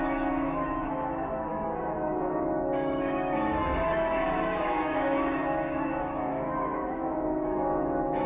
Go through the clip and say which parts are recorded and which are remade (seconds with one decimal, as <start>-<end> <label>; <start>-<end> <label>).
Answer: 0.0-8.3 remade